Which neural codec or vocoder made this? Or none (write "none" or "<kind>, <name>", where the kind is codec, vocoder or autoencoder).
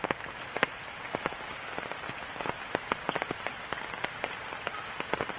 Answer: none